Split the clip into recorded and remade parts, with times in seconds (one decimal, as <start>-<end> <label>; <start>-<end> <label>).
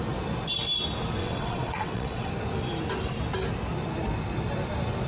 0.0-1.2 recorded; 1.2-2.3 remade; 2.3-5.1 recorded